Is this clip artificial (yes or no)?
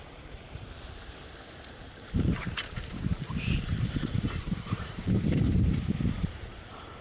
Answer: yes